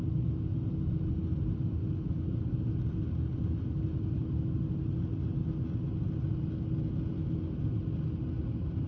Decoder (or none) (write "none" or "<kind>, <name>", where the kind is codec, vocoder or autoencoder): none